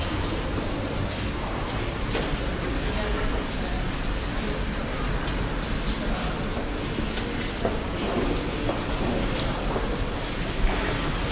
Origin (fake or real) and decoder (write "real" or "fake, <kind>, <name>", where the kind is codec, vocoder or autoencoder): real